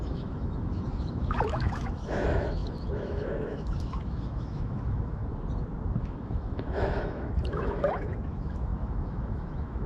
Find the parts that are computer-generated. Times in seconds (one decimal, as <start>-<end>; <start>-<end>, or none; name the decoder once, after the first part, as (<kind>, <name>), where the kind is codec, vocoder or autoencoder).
0.0-5.2 (autoencoder, DAC-VAE); 6.0-9.9